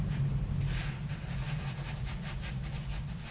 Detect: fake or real real